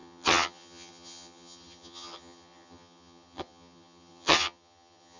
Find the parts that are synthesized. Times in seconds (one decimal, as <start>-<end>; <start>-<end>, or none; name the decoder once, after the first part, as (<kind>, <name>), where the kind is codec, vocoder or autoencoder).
0.0-5.2 (vocoder, HiFi-GAN)